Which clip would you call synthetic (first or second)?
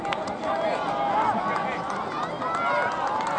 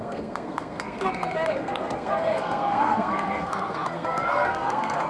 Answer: second